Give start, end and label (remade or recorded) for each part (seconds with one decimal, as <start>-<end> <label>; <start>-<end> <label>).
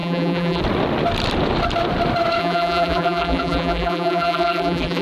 0.0-0.6 remade; 0.6-2.4 recorded; 2.4-5.0 remade